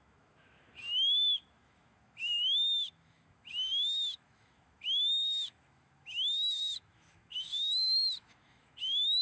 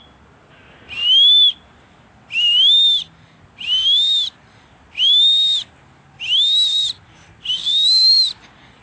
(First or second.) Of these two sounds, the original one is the second